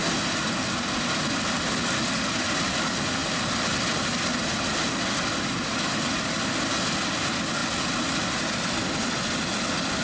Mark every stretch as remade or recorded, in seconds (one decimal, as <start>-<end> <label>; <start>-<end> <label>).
0.0-10.0 recorded